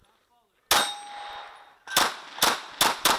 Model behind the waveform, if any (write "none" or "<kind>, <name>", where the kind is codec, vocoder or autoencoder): none